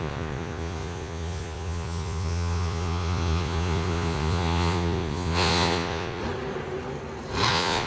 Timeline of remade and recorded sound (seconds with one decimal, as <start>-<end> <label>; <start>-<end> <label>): 0.0-6.2 remade; 6.2-7.5 recorded; 7.5-7.9 remade